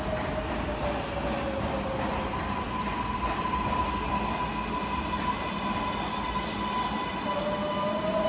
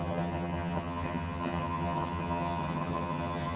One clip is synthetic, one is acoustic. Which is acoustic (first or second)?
first